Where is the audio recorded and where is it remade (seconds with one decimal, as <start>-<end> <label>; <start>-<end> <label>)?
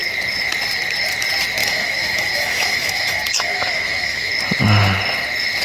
0.0-1.6 recorded; 1.6-4.3 remade; 4.3-5.6 recorded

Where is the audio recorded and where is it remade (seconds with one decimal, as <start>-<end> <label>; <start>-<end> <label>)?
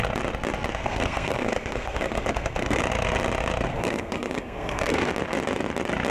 0.0-0.8 recorded; 0.8-2.8 remade; 2.8-3.7 recorded; 3.7-5.1 remade; 5.1-6.1 recorded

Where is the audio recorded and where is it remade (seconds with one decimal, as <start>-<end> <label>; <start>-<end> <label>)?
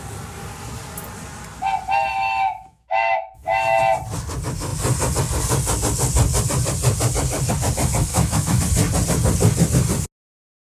0.0-2.1 recorded; 2.1-3.8 remade; 3.8-8.1 recorded; 8.1-8.6 remade; 8.6-10.7 recorded